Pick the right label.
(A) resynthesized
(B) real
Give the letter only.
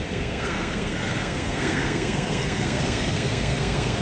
A